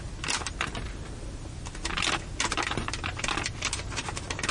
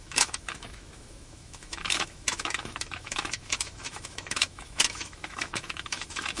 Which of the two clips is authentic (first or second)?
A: first